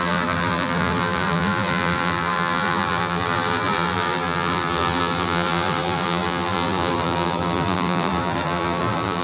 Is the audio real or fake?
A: fake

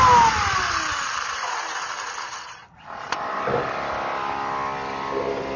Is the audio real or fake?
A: real